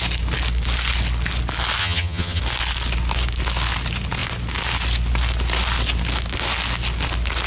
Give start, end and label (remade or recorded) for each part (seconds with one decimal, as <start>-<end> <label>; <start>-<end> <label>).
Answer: 0.0-1.8 recorded; 1.8-2.4 remade; 2.4-7.5 recorded